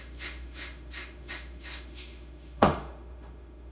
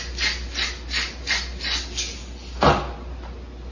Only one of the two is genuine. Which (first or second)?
second